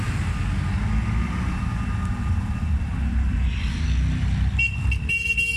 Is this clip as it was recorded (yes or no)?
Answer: yes